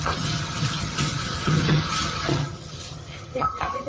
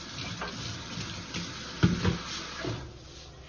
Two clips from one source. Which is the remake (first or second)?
first